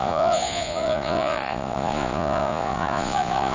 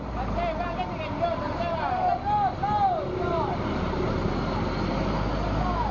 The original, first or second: second